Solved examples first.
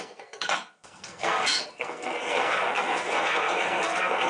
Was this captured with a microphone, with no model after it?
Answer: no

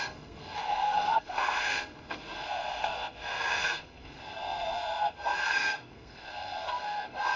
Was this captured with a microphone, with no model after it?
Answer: no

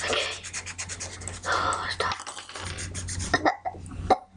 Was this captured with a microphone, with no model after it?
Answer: yes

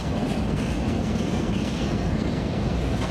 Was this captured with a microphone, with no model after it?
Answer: no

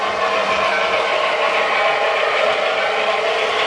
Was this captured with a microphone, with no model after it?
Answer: yes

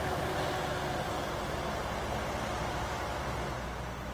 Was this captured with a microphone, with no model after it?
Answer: yes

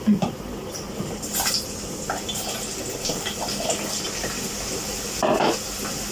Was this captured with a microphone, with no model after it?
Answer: yes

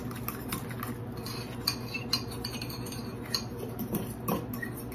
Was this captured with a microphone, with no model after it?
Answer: yes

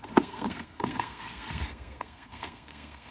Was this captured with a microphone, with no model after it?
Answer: no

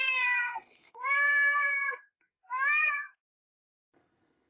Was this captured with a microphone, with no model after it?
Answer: no